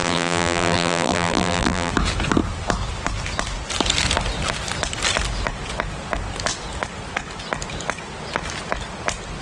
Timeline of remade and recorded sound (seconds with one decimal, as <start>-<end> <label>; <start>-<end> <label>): 0.0-1.9 remade; 1.9-9.4 recorded